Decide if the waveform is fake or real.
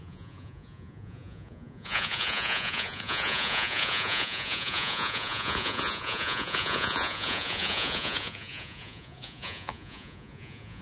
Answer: fake